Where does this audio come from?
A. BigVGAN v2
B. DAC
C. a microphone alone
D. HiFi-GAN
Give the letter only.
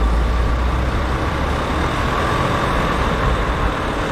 C